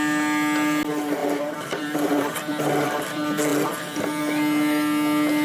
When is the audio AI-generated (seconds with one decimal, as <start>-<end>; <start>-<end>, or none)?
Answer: 1.2-2.5; 3.5-4.2